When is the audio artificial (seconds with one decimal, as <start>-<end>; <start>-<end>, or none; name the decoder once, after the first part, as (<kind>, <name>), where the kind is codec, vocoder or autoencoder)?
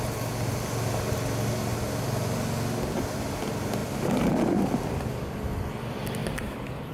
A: none